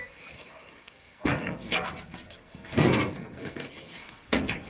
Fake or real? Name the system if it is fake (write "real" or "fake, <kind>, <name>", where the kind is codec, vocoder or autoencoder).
fake, codec, SNAC